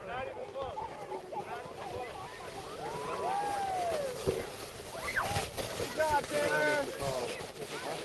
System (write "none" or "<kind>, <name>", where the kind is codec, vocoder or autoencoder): none